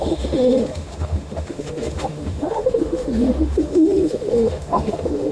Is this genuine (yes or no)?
no